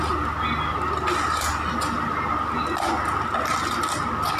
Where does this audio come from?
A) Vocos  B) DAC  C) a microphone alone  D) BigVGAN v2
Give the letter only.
C